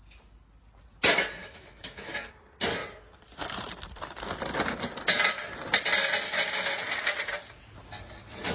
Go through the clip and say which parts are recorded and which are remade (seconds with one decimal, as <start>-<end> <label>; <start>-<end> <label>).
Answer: 0.0-1.4 recorded; 1.4-2.3 remade; 2.3-8.5 recorded